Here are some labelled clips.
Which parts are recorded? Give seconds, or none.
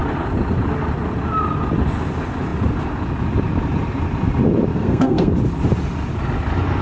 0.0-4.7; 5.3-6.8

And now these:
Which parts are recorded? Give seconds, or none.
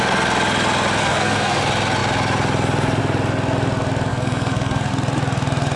0.0-1.0; 1.6-4.1; 4.9-5.8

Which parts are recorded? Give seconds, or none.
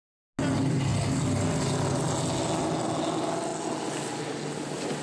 0.0-5.0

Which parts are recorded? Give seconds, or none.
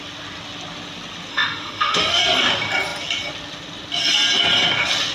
0.0-1.3; 2.2-5.1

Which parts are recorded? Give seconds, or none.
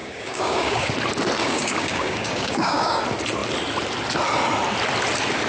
0.9-1.4; 3.0-5.5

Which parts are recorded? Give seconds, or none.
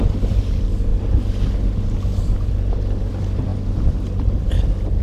0.0-5.0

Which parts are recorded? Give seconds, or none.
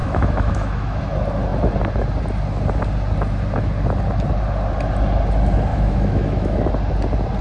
1.0-5.7; 6.7-7.4